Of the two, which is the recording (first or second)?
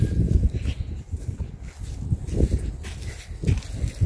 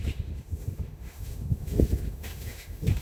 first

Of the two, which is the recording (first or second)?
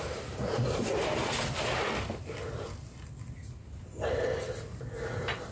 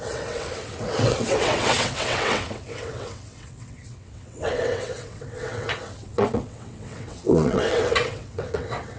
first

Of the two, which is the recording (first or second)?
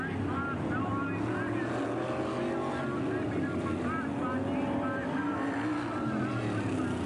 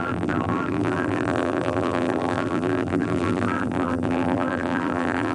first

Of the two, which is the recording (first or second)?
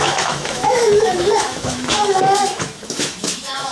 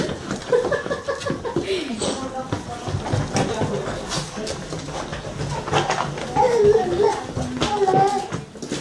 second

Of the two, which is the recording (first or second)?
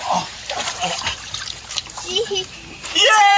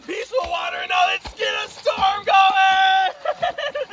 second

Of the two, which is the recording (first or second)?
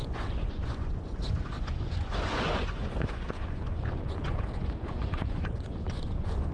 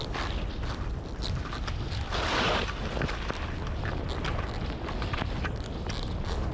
second